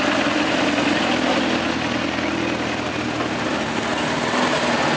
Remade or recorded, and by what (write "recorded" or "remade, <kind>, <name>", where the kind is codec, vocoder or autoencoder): recorded